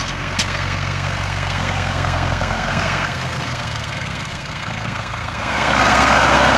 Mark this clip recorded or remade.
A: remade